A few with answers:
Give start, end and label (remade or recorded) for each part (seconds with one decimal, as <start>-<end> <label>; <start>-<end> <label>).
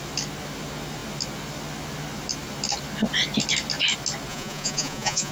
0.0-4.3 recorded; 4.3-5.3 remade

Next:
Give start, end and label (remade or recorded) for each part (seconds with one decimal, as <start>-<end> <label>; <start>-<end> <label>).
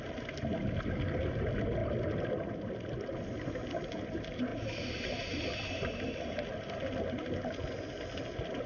0.0-8.7 recorded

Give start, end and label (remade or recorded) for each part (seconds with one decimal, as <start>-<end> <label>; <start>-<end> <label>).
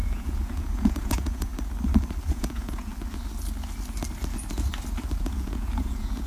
0.0-1.5 remade; 1.5-2.3 recorded; 2.3-2.9 remade; 2.9-5.2 recorded; 5.2-6.3 remade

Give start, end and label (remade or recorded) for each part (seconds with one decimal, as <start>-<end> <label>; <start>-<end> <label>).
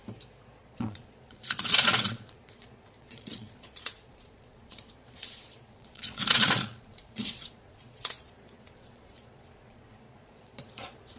0.0-0.6 recorded; 0.6-11.2 remade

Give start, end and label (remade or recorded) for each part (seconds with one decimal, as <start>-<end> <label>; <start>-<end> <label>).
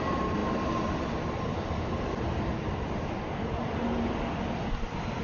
0.0-5.2 recorded